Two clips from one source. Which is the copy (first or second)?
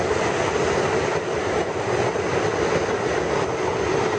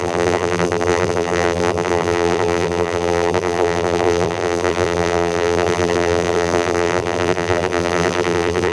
second